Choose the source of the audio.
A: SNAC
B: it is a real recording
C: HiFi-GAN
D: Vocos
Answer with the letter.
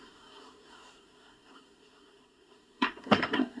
A